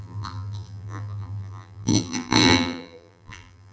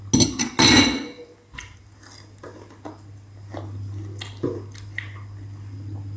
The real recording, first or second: second